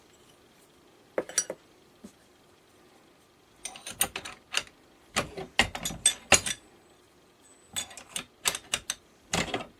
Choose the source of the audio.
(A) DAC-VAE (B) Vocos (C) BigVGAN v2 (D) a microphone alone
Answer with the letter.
D